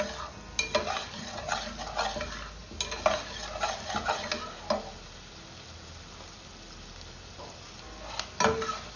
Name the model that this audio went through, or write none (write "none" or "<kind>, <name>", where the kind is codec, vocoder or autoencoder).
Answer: none